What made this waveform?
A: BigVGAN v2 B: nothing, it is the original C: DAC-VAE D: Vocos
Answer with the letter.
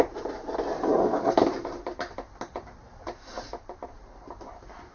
A